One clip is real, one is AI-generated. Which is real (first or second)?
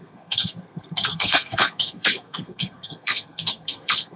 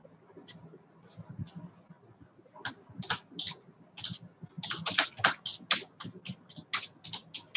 second